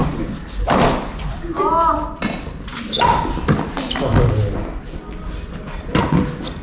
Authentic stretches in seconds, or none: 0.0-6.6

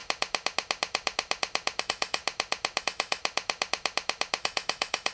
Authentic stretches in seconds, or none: 0.0-1.8; 2.2-2.8; 3.2-4.4

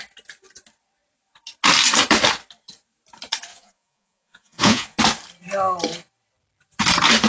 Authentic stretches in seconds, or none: 0.0-3.5; 5.0-7.3

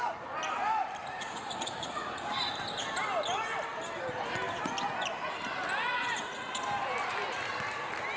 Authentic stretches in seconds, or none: 0.0-1.0; 2.5-5.9; 6.5-8.2